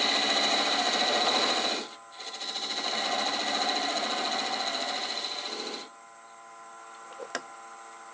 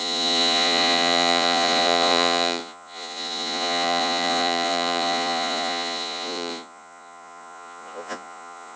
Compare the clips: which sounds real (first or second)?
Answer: first